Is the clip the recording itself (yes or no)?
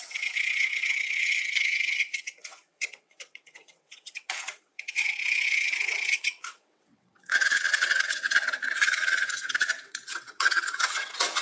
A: no